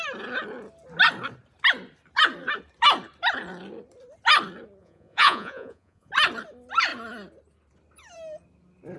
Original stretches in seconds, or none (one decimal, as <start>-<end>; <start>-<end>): 0.0-4.8; 6.1-9.0